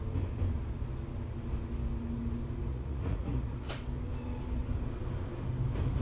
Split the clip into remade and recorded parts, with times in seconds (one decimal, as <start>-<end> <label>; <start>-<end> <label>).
0.0-2.7 recorded; 2.7-3.7 remade; 3.7-6.0 recorded